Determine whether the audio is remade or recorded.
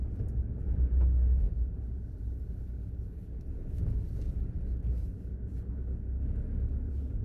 recorded